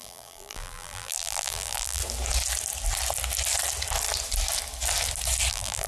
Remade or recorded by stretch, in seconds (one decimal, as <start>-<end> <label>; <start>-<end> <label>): 0.0-2.0 remade; 2.0-5.5 recorded; 5.5-5.9 remade